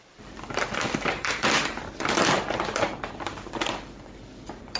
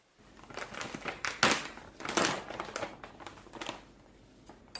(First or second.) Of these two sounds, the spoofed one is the first